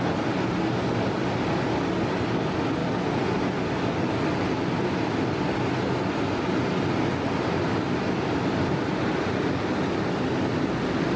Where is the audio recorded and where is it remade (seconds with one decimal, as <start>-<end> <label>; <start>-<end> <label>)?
0.0-11.2 recorded